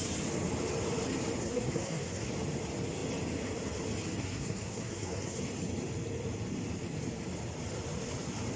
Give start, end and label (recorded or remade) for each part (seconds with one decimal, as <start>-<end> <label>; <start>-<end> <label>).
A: 0.0-1.4 recorded; 1.4-2.3 remade; 2.3-4.2 recorded; 4.2-5.4 remade; 5.4-8.6 recorded